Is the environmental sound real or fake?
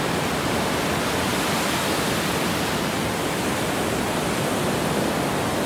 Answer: real